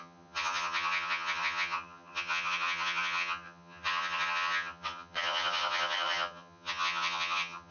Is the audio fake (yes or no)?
yes